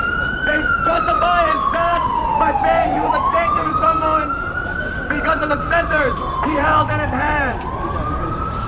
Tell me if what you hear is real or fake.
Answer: fake